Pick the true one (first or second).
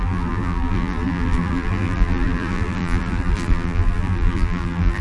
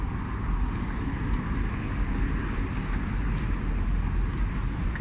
second